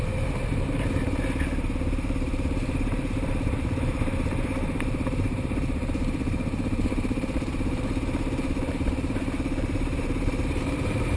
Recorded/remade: remade